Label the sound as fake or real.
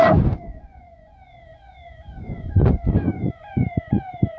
fake